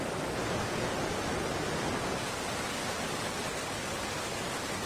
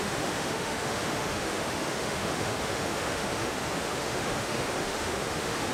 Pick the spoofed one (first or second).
second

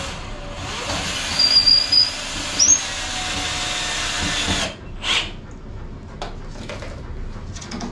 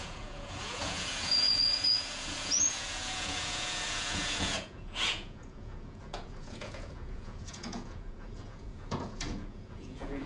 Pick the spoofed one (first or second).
second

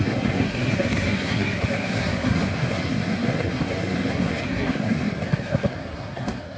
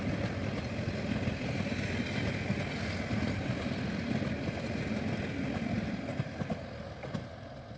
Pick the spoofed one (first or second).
first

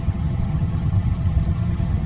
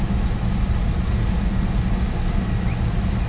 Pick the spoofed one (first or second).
first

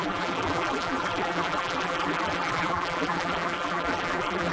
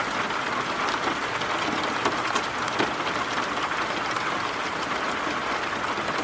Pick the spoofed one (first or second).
first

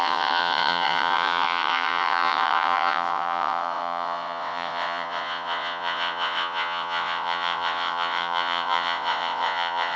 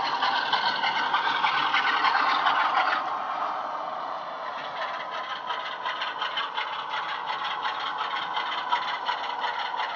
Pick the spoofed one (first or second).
first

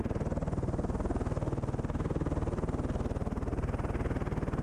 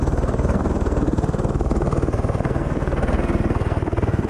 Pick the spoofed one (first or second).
second